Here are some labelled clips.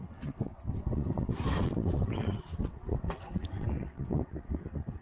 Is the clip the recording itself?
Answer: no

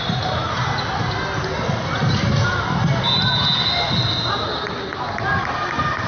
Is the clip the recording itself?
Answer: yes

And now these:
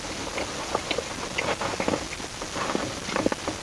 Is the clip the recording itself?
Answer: yes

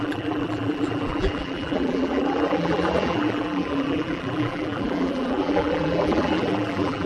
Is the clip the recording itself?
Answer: no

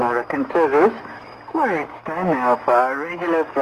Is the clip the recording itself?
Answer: no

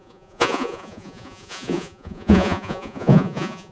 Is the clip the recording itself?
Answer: no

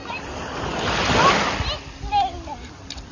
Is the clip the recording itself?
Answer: yes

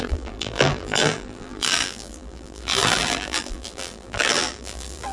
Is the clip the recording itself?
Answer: no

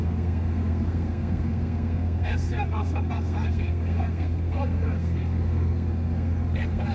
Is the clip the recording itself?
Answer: no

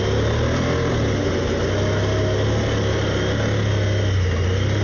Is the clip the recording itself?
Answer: yes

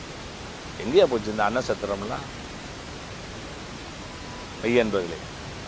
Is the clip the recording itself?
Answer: yes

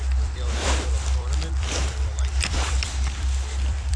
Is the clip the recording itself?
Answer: no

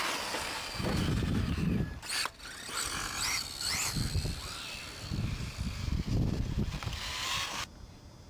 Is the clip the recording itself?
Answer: yes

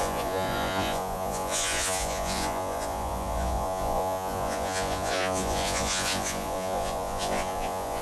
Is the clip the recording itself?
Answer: no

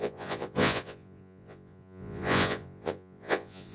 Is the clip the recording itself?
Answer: no